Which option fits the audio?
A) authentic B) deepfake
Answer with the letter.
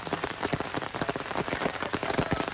B